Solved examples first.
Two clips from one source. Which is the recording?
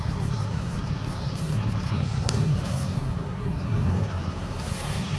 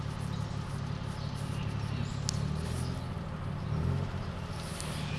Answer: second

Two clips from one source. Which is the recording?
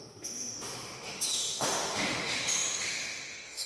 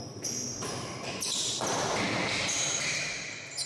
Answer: second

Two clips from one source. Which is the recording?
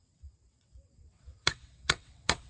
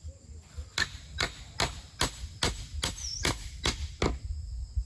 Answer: second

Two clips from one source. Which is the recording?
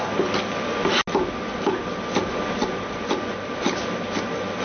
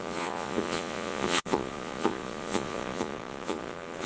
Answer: first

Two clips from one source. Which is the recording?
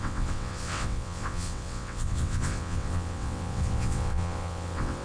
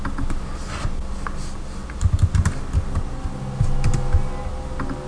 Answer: second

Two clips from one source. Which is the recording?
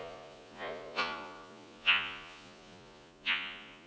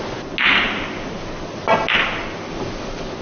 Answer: second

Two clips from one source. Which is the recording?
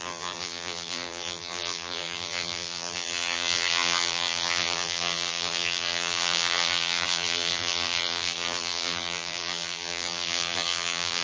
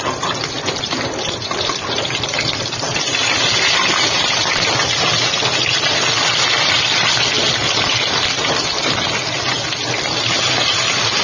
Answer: second